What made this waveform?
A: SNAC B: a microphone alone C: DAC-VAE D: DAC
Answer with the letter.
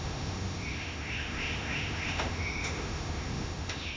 C